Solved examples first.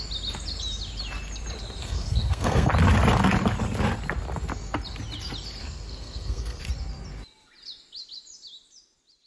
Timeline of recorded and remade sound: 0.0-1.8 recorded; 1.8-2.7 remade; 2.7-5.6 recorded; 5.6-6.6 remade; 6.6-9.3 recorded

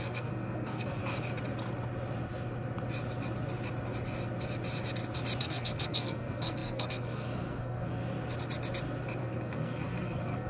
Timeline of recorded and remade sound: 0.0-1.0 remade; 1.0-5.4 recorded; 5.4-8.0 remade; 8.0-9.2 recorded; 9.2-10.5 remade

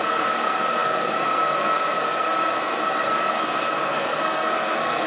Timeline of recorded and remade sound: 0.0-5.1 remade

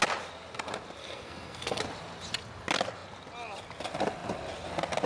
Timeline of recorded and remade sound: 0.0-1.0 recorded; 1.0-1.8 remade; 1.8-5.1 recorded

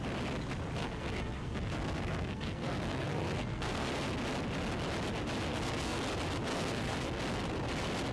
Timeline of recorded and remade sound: 0.0-0.8 recorded; 0.8-3.9 remade; 3.9-5.5 recorded; 5.5-6.0 remade; 6.0-6.5 recorded; 6.5-7.2 remade; 7.2-8.1 recorded

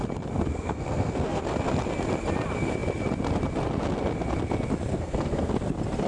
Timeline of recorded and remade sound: 0.0-0.5 recorded; 0.5-1.4 remade; 1.4-4.9 recorded; 4.9-5.5 remade; 5.5-6.1 recorded